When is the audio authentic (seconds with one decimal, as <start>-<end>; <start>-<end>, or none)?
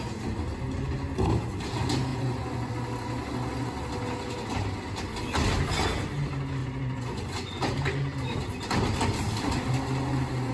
0.0-2.1; 2.7-6.6; 7.6-10.5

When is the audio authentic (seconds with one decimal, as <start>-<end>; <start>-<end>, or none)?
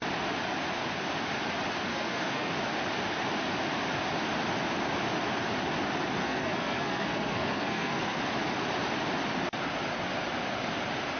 0.0-1.9; 2.5-6.2; 8.2-11.2